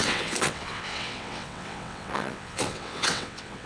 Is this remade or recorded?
remade